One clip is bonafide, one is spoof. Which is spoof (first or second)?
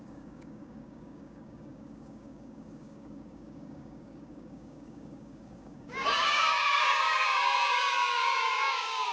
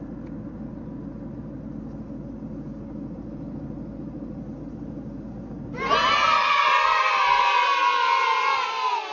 first